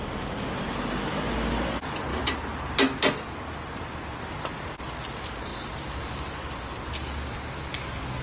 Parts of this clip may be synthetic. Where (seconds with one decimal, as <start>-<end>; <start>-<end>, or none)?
none